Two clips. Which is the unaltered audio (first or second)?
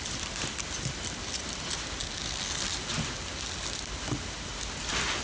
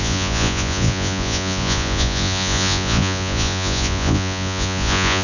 first